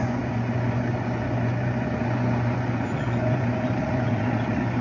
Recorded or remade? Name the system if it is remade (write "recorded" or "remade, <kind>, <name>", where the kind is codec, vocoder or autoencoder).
remade, vocoder, Vocos